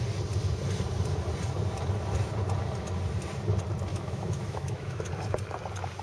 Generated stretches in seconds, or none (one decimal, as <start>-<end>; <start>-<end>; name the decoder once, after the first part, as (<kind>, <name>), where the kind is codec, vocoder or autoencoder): 3.9-5.1 (autoencoder, DAC-VAE)